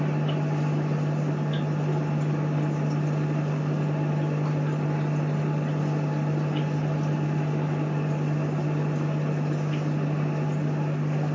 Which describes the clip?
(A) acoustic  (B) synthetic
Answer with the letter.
A